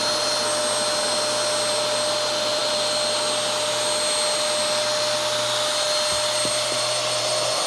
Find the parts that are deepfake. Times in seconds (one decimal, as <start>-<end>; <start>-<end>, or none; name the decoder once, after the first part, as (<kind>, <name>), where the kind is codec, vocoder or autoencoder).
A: none

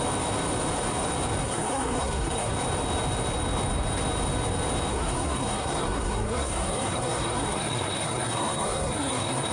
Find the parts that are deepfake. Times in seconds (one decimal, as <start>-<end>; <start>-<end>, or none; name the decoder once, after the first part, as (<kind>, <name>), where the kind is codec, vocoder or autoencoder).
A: 1.4-2.5 (codec, SNAC); 4.9-9.5